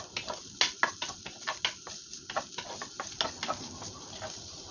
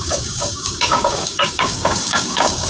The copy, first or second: second